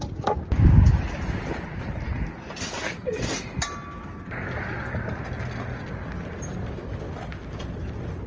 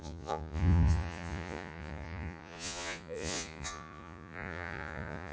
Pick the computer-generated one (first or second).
second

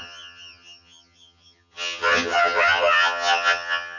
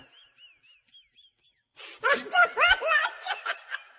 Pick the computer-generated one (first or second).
first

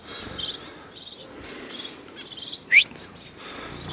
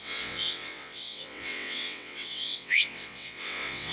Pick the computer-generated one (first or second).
second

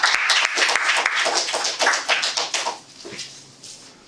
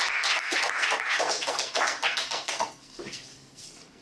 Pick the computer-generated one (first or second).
second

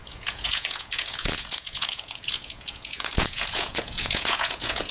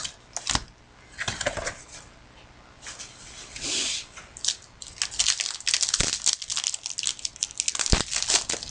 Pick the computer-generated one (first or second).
first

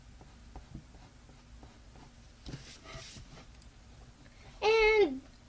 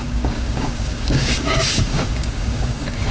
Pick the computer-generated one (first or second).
second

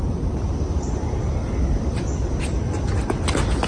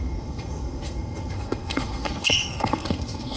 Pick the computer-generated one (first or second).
second